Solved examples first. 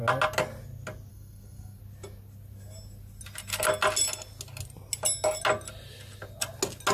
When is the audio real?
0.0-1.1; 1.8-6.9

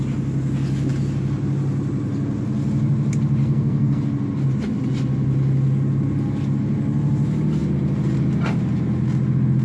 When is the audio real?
0.0-3.4; 4.0-9.6

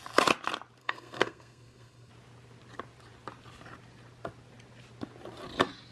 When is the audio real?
0.0-0.8; 2.1-5.9

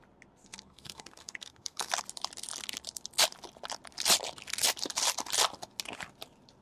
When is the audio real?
0.0-0.4; 1.9-6.6

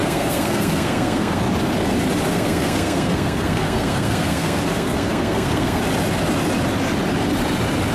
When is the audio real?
1.4-2.3; 5.8-7.9

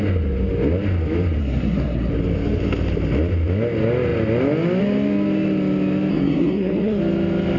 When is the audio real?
0.0-1.4; 2.1-6.1; 7.0-7.6